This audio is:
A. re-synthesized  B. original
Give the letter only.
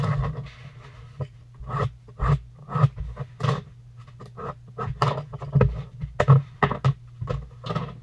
B